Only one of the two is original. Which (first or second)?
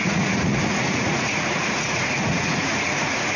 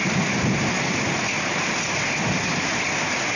second